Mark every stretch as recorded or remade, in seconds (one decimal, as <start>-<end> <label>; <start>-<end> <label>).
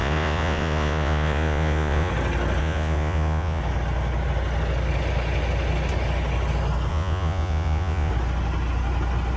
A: 0.0-2.1 remade; 2.1-2.6 recorded; 2.6-3.6 remade; 3.6-6.9 recorded; 6.9-8.1 remade; 8.1-9.4 recorded